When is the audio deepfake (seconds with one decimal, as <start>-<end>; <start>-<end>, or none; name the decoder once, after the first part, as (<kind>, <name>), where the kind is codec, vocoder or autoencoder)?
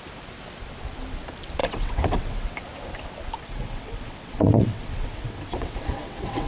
1.6-2.5 (vocoder, WaveNeXt); 3.4-6.5